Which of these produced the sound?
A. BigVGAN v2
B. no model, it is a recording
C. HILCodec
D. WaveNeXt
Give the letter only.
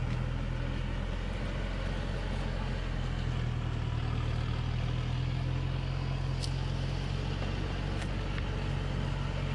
B